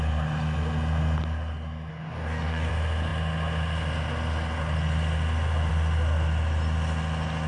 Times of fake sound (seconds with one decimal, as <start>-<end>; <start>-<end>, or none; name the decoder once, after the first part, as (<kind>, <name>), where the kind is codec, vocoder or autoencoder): 1.9-2.7 (codec, DAC)